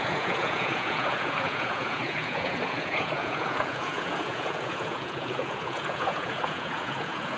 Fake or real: fake